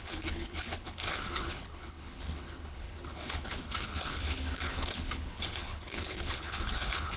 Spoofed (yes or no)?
yes